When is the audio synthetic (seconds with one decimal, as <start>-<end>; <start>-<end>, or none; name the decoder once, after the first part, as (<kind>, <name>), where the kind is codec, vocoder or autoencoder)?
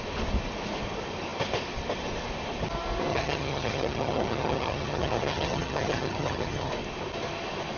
3.1-6.7 (vocoder, HiFi-GAN)